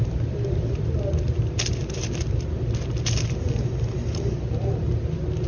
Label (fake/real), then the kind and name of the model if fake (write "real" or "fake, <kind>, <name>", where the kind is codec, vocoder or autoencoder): real